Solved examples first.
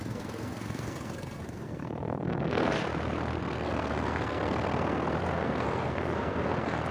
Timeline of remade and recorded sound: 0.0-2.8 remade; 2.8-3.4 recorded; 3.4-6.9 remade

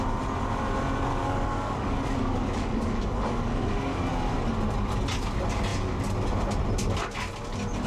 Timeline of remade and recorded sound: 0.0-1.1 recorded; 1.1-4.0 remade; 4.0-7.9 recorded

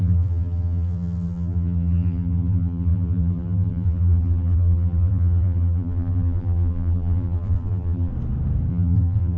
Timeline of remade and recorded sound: 0.0-8.1 remade; 8.1-8.7 recorded; 8.7-9.4 remade